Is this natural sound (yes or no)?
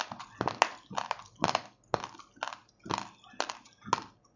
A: yes